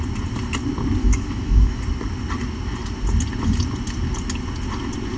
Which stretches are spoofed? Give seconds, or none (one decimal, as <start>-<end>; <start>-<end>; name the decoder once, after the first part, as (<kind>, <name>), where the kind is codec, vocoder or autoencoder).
1.0-1.8 (autoencoder, DAC-VAE)